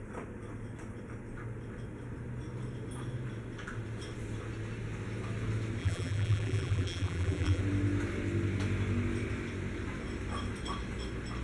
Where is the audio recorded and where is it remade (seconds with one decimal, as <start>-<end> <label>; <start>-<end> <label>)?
0.0-5.8 recorded; 5.8-7.6 remade; 7.6-11.4 recorded